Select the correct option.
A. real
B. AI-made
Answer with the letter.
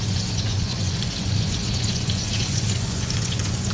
B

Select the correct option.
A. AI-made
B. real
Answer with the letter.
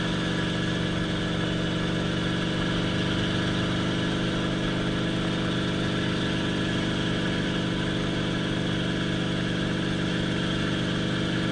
B